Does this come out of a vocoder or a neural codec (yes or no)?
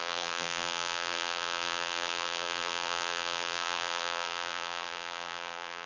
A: yes